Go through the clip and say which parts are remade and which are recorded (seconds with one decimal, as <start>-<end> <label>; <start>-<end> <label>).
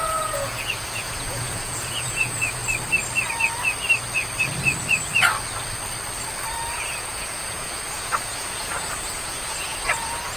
0.0-2.6 remade; 2.6-6.7 recorded; 6.7-10.4 remade